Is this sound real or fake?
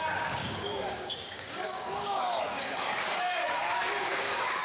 fake